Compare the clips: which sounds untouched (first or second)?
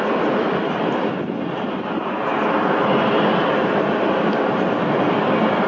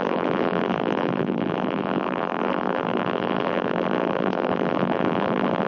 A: first